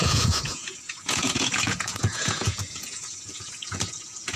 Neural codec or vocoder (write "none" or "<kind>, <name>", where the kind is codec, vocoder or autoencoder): vocoder, Vocos